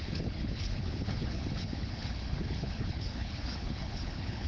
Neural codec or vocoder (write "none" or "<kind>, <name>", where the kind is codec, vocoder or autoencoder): codec, HILCodec